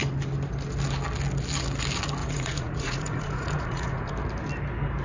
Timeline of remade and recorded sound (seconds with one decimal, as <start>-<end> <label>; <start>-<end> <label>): 0.0-2.2 recorded; 2.2-4.1 remade; 4.1-5.0 recorded